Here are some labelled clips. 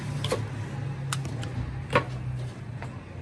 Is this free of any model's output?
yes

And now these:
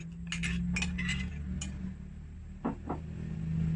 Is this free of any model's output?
yes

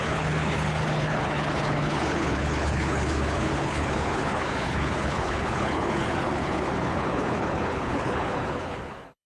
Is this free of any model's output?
no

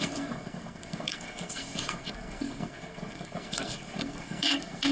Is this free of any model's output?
no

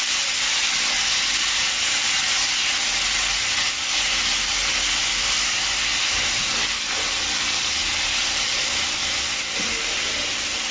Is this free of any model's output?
yes